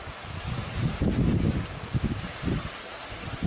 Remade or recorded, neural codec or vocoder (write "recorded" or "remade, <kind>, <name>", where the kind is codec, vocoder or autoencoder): recorded